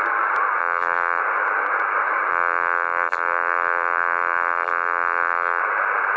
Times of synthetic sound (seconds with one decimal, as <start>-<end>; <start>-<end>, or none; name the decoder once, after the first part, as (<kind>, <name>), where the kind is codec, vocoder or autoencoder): 0.6-1.2 (vocoder, BigVGAN v2); 2.3-5.6